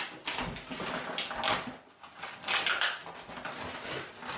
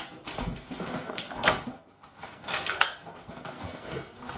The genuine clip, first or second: first